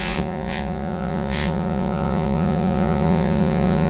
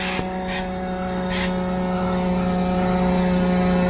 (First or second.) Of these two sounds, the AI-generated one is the first